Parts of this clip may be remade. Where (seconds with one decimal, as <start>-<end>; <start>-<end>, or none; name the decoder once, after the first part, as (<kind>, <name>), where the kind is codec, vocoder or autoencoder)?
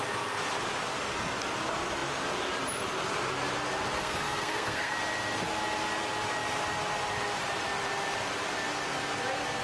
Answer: 4.0-4.9 (codec, SNAC)